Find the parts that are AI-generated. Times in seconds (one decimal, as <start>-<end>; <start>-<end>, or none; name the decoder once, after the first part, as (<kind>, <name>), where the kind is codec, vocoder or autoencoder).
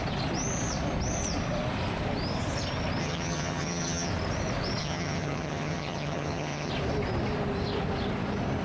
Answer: 3.0-4.1 (vocoder, HiFi-GAN); 4.8-6.7